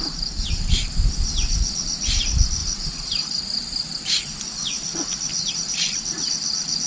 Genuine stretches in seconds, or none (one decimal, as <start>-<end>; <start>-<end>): 0.0-6.9